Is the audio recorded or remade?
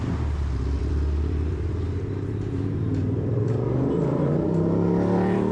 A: remade